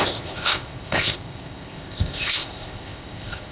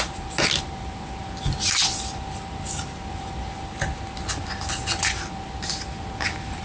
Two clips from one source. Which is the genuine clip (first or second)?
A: second